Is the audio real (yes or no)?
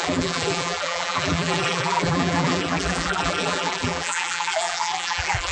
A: no